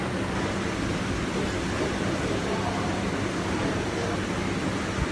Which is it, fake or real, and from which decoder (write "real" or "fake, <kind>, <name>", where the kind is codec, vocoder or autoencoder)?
real